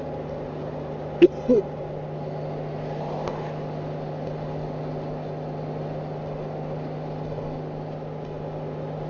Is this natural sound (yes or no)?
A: yes